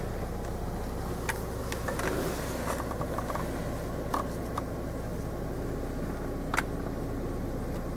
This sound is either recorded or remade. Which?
recorded